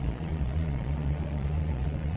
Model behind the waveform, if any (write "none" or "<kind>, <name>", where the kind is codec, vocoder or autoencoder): vocoder, Vocos